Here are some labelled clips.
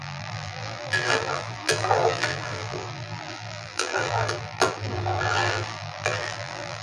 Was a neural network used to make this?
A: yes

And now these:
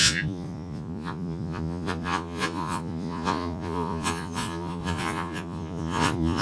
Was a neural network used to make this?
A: yes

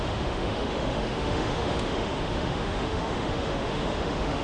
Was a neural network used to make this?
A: yes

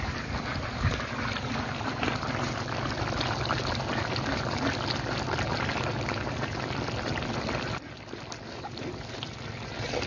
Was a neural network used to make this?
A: no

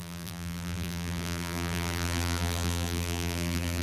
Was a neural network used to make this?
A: yes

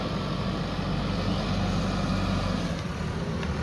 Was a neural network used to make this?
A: no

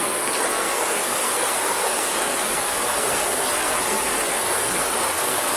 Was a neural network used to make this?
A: yes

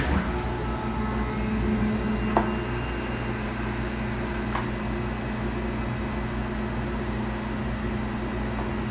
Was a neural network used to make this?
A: no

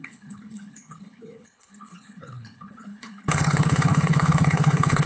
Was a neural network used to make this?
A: yes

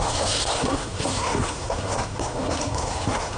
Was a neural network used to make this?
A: yes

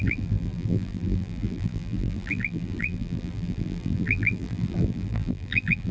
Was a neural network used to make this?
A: yes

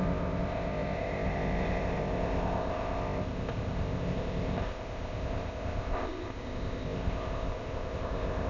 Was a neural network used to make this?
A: yes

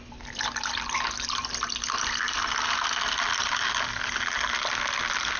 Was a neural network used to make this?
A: no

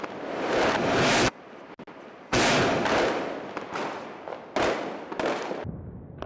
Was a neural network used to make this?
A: no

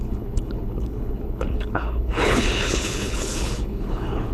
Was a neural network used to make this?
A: yes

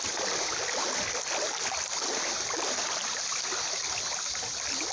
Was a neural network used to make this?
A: no